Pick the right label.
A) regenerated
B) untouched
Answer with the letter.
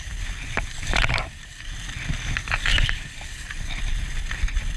B